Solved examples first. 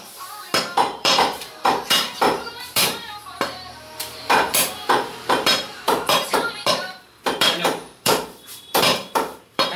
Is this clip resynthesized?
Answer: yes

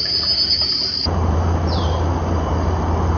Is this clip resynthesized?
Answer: yes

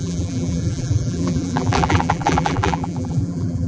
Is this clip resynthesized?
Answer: yes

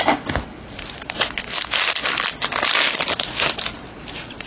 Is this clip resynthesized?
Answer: yes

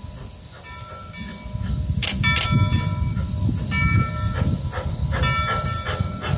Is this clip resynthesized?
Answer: no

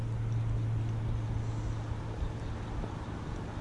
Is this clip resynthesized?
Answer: no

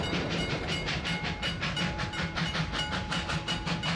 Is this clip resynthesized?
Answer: yes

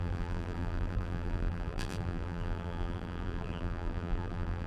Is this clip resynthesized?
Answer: yes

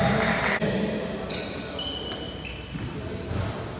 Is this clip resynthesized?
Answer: no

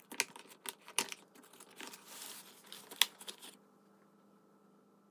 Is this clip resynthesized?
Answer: no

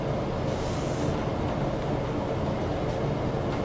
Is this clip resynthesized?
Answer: no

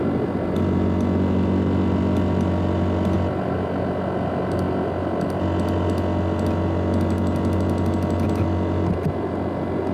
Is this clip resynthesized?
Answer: no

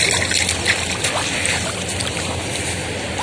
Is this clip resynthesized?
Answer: no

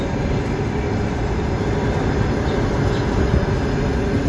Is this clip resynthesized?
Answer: no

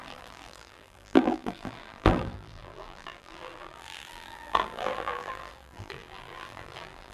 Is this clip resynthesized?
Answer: yes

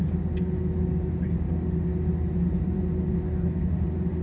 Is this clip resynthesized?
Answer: no